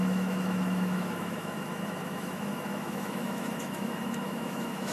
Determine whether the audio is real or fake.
fake